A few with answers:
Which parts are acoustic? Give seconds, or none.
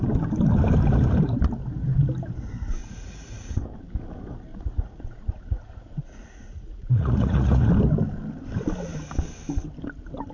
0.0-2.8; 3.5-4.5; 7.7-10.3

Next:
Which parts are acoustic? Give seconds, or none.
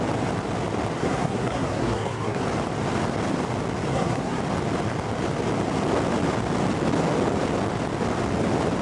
0.0-1.0; 2.4-3.9; 4.4-8.8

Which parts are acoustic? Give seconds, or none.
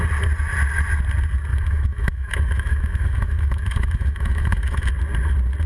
0.0-1.5; 4.9-5.7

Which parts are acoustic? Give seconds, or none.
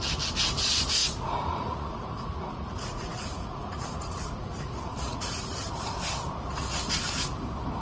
0.0-1.0; 5.7-7.8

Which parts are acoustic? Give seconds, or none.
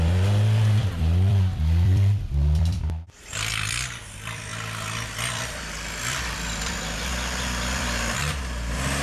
4.5-5.3